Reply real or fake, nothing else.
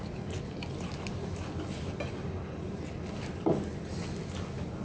real